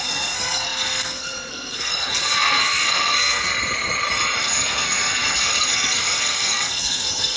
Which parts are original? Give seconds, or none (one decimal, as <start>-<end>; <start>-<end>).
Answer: 3.5-4.4

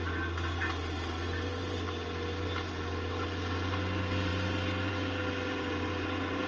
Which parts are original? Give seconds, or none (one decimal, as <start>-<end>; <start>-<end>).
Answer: 0.0-4.3; 4.9-6.5

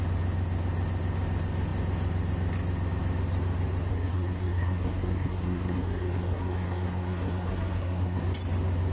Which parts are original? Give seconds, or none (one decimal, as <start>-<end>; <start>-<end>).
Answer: 0.0-3.9; 8.2-8.9

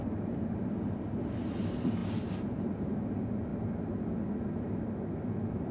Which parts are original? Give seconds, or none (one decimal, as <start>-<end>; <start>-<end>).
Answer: 0.0-2.0; 2.9-5.7